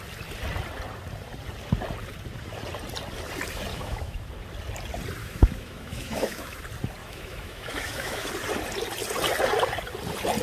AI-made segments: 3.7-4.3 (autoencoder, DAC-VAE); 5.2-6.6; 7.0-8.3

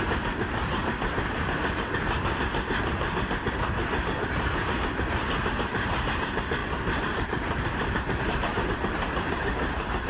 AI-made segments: 0.0-0.8 (vocoder, BigVGAN v2); 5.5-10.1

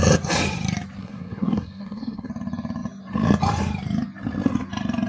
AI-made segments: 1.0-2.3 (codec, SNAC)

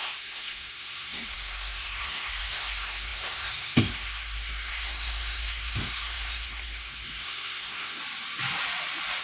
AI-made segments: 0.0-8.0 (codec, SNAC)

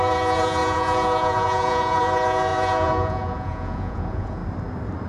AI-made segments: 0.0-4.4 (vocoder, Vocos)